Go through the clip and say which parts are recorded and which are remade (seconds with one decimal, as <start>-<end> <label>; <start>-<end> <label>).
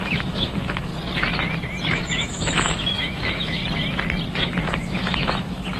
0.0-0.9 remade; 0.9-1.9 recorded; 1.9-3.6 remade; 3.6-4.3 recorded; 4.3-5.8 remade